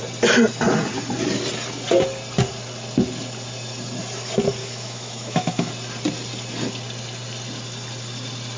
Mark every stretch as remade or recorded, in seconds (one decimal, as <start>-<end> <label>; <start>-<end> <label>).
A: 0.0-4.6 recorded; 4.6-5.7 remade; 5.7-8.6 recorded